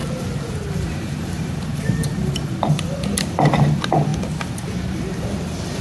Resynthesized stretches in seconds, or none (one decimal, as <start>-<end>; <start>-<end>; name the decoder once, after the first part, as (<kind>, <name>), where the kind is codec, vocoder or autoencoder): 0.0-4.1 (vocoder, BigVGAN v2); 4.9-5.8

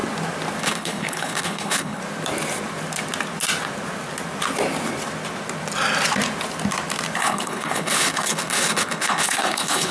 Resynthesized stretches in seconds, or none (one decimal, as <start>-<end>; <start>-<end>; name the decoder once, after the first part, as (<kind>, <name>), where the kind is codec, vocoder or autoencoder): 0.6-2.0 (codec, HILCodec); 7.2-9.9

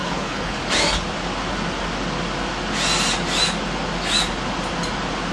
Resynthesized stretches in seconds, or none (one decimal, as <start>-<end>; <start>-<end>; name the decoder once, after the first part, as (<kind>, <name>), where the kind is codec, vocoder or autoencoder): 0.0-0.6 (codec, HILCodec)